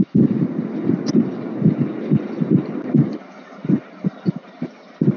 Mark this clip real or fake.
real